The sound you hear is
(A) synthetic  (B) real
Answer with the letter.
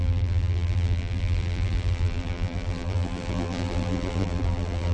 A